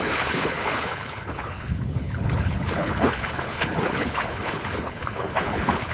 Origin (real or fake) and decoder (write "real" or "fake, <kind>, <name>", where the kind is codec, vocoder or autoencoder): fake, codec, HILCodec